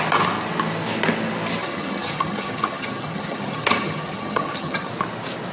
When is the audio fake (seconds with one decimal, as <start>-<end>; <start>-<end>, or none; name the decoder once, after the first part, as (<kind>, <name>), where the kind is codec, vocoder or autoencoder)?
1.6-4.9 (vocoder, HiFi-GAN)

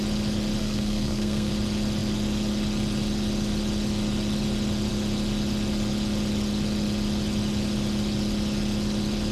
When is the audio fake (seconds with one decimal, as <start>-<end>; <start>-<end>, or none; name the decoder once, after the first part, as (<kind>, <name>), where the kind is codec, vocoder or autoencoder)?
0.6-1.5 (codec, SNAC)

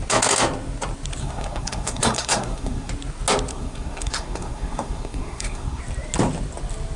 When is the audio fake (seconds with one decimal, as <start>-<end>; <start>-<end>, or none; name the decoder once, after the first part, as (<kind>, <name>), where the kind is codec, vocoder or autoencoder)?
1.2-2.9 (codec, SNAC); 3.5-5.8

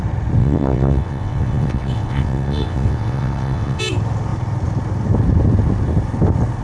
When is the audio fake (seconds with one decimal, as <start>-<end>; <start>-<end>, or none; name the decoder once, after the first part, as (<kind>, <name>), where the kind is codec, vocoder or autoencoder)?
0.4-3.8 (vocoder, WaveNeXt)

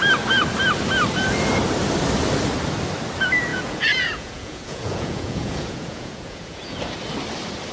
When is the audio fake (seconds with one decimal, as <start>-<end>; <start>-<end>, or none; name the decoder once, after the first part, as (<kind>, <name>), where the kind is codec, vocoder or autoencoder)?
3.5-6.8 (vocoder, Vocos)